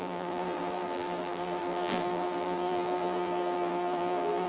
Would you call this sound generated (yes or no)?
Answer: yes